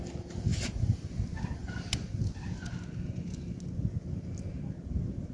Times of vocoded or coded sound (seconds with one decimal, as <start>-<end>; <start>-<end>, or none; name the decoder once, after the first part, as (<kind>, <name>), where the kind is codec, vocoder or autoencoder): 0.5-1.1 (vocoder, BigVGAN v2)